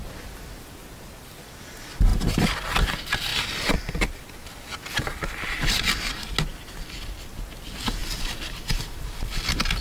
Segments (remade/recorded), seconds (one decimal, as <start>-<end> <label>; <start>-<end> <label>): 0.0-2.1 recorded; 2.1-2.9 remade; 2.9-3.3 recorded; 3.3-5.7 remade; 5.7-6.5 recorded; 6.5-7.3 remade; 7.3-8.0 recorded; 8.0-9.4 remade; 9.4-9.8 recorded